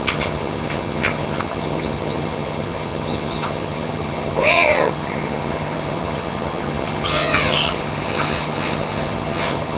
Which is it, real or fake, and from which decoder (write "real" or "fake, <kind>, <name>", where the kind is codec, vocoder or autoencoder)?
fake, vocoder, HiFi-GAN